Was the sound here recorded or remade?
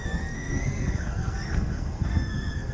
remade